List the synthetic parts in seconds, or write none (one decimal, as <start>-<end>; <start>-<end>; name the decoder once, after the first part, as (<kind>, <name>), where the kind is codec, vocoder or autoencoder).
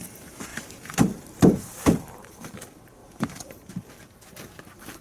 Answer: 0.5-2.5 (vocoder, BigVGAN v2); 3.0-3.9